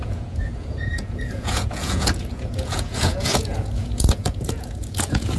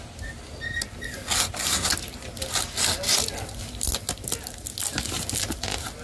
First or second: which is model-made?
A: first